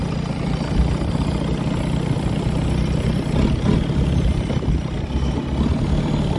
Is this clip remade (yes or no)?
no